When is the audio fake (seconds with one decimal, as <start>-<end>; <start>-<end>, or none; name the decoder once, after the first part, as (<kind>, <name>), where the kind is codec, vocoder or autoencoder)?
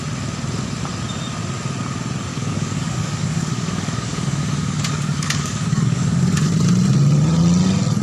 2.3-6.5 (codec, DAC)